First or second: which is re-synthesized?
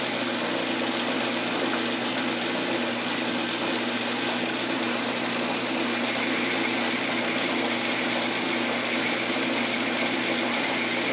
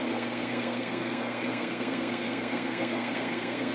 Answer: second